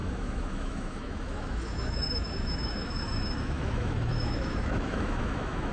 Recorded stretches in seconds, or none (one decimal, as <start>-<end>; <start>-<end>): none